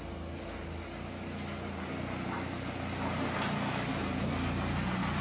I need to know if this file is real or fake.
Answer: real